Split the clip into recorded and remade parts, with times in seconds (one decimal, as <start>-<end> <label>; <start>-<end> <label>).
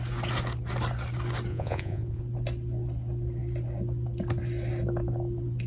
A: 0.0-1.5 recorded; 1.5-2.2 remade; 2.2-5.7 recorded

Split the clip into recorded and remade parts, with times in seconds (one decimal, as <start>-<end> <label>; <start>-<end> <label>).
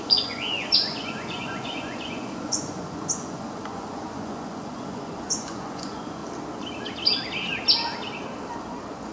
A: 0.0-6.2 remade; 6.2-8.6 recorded; 8.6-9.1 remade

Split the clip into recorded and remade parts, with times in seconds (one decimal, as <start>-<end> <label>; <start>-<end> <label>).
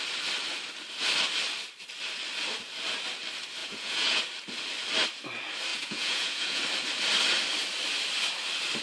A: 0.0-3.6 recorded; 3.6-4.2 remade; 4.2-5.7 recorded; 5.7-6.6 remade; 6.6-8.8 recorded